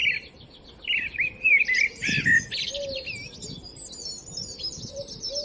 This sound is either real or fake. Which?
real